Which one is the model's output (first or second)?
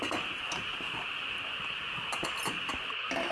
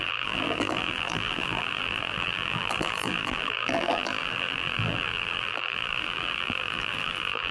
second